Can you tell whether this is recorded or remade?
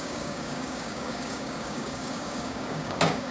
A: remade